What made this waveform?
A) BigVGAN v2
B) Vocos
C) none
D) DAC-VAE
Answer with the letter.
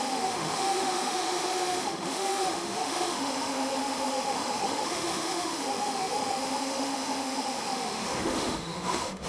D